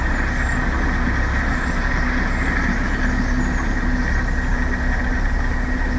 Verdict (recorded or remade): recorded